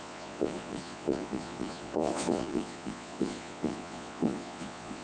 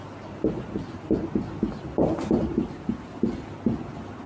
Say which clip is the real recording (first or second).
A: second